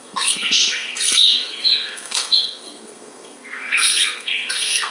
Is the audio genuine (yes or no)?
no